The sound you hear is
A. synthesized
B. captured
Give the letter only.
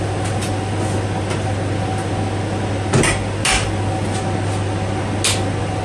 B